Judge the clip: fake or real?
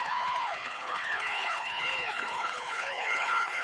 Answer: fake